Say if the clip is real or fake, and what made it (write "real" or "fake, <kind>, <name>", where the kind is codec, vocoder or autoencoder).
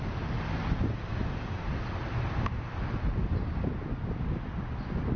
real